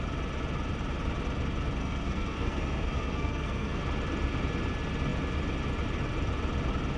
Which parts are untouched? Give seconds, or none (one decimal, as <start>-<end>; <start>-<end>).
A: 0.0-1.8; 3.8-7.0

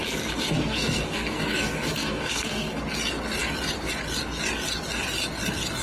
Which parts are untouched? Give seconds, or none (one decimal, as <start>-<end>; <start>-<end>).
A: 2.8-5.8

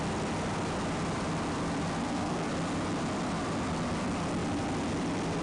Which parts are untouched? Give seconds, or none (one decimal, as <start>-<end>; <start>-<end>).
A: 0.0-2.0; 2.5-5.4

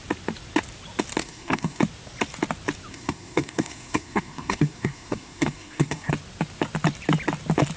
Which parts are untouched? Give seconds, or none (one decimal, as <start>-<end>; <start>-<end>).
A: 0.0-1.2; 1.8-2.9; 6.1-7.8

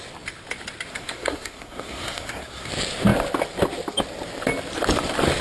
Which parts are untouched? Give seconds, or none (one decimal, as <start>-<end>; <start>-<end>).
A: 0.0-0.9; 2.7-5.4

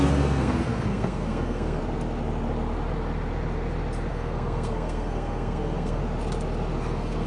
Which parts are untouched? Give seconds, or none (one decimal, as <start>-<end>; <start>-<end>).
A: 1.8-4.1; 6.0-6.8

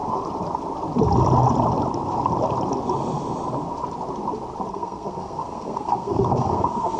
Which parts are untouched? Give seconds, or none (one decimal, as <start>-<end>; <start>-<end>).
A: 0.0-4.7